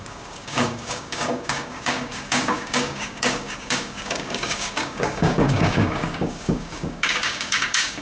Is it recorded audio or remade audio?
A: remade